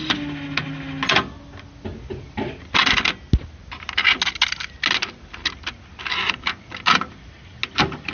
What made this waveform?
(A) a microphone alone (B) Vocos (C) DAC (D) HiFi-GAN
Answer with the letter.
A